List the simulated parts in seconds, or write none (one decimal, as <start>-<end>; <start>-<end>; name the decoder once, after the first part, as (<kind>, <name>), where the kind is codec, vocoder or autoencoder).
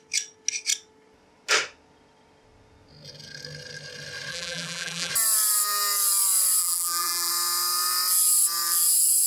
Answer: 4.3-5.1 (vocoder, BigVGAN v2); 6.6-7.3